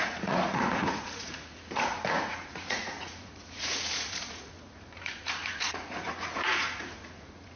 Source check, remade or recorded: remade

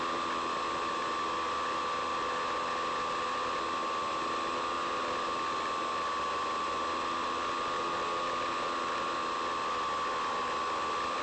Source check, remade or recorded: recorded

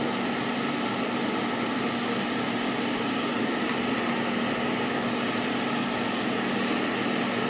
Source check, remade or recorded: recorded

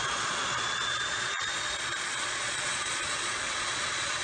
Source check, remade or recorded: remade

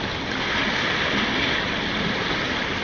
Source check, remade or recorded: recorded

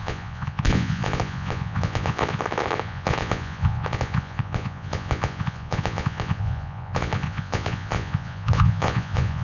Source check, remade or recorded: remade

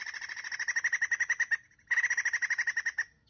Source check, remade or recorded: recorded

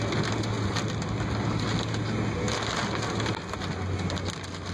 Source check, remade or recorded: recorded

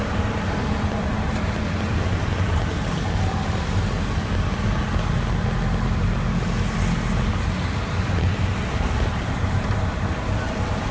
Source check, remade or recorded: recorded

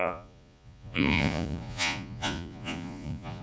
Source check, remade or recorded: remade